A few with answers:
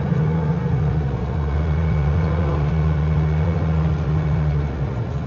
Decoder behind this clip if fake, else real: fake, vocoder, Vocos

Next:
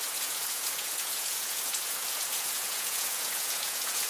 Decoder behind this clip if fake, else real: fake, vocoder, Vocos